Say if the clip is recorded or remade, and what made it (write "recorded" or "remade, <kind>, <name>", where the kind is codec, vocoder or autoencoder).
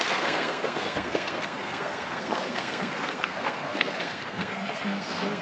remade, codec, SNAC